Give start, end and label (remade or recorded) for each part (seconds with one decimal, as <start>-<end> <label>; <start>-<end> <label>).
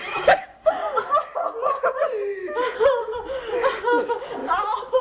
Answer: 0.0-0.8 remade; 0.8-3.8 recorded; 3.8-4.4 remade; 4.4-5.0 recorded